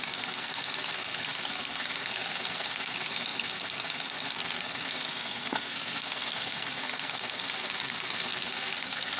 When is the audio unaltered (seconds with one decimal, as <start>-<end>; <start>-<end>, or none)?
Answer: none